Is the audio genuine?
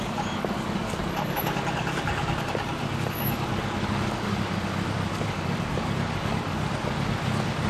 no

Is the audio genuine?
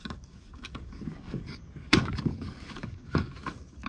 no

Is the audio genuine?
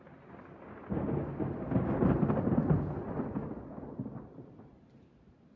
yes